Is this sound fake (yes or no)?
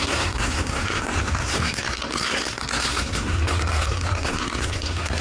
yes